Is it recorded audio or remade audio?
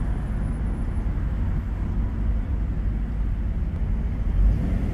recorded